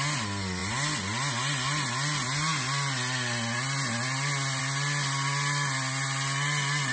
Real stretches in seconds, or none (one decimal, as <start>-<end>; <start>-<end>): 0.0-6.9